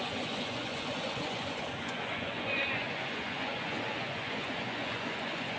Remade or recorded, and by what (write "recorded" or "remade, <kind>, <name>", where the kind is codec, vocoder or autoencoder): remade, vocoder, Vocos